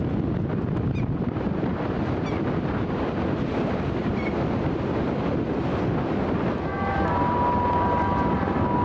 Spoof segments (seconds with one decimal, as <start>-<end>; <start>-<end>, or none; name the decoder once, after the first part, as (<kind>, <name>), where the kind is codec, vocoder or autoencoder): none